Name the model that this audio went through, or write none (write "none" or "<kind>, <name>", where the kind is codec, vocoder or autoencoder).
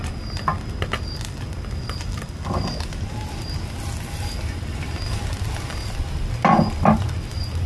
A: none